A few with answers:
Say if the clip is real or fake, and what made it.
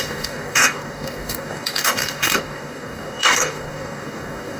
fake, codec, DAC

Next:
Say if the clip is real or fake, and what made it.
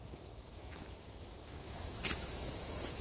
fake, autoencoder, DAC-VAE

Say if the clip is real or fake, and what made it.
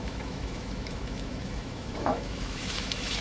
fake, autoencoder, DAC-VAE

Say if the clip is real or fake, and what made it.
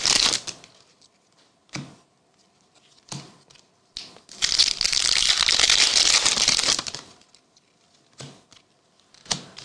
real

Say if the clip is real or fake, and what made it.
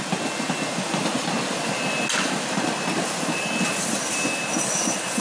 real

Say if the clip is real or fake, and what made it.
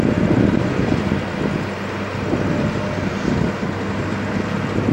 real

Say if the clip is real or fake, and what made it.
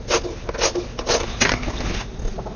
real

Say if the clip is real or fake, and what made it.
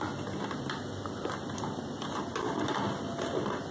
real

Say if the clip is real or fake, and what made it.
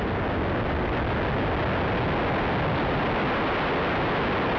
real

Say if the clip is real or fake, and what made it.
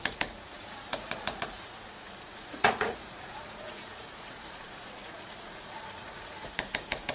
fake, vocoder, Vocos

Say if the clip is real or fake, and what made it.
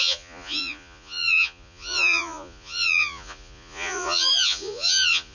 fake, vocoder, Vocos